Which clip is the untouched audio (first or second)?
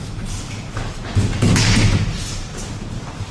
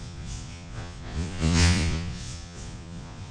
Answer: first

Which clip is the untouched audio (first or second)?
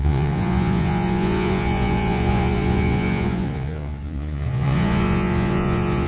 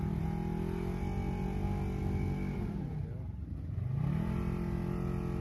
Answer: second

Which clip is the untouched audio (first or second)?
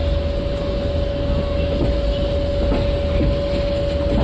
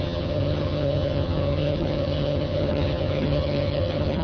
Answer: first